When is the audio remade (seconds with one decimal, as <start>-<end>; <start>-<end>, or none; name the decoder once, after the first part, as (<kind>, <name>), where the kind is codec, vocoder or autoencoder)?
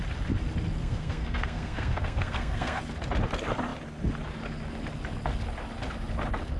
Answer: 0.8-2.8 (codec, SNAC)